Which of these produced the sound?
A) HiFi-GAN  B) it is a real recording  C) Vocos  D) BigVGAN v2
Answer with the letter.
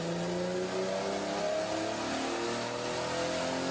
B